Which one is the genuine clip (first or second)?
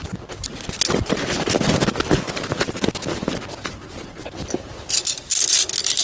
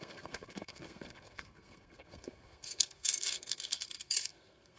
first